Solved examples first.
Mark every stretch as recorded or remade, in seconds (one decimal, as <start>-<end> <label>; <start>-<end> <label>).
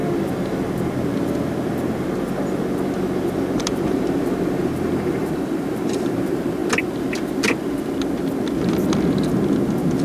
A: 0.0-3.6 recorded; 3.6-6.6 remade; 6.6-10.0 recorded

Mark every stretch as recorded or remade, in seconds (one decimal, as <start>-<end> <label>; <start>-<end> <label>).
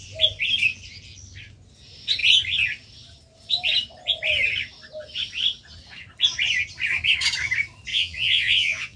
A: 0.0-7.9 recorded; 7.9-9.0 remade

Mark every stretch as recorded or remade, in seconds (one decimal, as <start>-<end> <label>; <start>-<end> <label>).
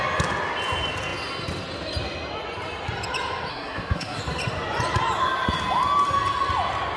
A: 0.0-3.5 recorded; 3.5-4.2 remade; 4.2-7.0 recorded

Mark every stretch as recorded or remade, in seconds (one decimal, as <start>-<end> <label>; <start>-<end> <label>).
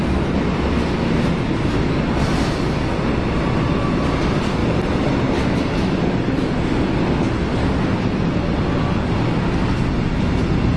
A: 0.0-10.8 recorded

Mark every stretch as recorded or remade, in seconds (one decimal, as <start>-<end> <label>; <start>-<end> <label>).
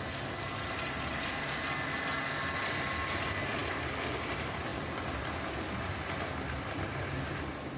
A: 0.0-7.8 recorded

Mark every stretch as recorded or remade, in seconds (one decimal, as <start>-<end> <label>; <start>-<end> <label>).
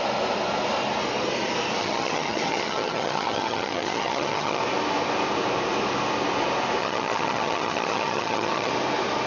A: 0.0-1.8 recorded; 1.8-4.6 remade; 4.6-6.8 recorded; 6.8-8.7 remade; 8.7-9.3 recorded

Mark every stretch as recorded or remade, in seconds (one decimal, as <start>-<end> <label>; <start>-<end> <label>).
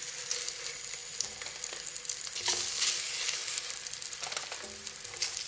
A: 0.0-5.5 recorded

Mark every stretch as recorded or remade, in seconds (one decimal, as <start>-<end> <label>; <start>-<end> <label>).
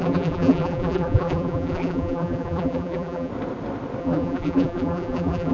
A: 0.0-3.3 remade; 3.3-4.0 recorded; 4.0-5.5 remade